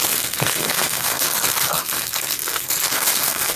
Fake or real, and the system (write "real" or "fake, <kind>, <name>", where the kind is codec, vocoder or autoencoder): fake, codec, SNAC